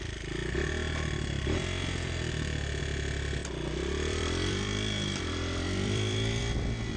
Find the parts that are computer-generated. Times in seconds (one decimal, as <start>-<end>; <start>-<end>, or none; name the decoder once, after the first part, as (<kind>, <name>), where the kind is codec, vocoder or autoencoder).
3.4-6.4 (vocoder, BigVGAN v2)